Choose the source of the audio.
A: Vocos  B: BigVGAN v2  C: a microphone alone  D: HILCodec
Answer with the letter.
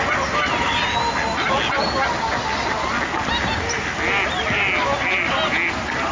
C